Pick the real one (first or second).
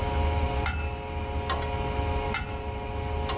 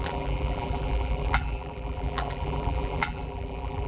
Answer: first